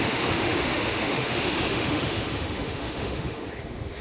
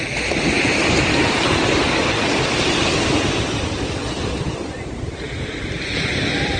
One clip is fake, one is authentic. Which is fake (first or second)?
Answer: first